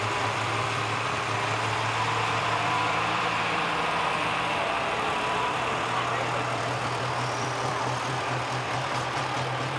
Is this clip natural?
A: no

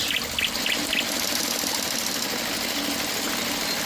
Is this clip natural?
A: yes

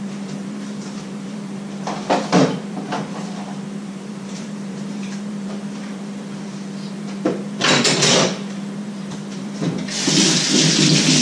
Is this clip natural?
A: no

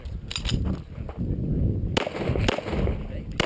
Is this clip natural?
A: yes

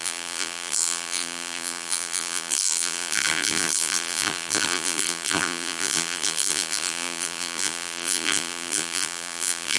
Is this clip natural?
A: no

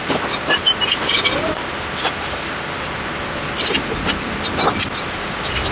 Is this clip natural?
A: yes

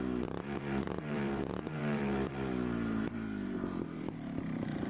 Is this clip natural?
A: no